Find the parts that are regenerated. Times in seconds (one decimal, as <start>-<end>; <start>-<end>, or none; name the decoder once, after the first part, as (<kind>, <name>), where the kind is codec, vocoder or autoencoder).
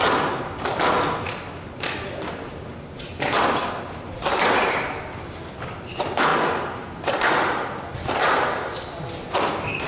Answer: none